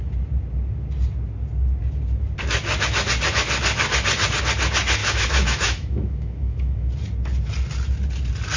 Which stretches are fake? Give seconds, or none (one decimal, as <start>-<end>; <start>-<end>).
5.0-6.9